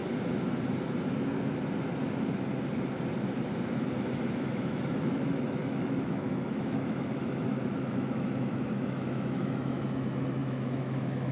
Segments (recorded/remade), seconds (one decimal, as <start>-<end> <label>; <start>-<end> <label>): 0.0-4.3 recorded; 4.3-11.3 remade